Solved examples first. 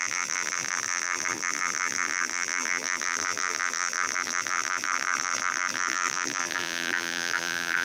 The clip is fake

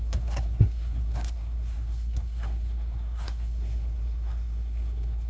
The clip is fake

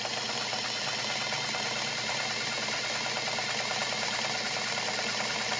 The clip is real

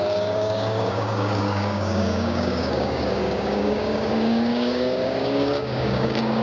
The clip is fake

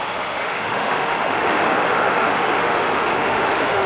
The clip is fake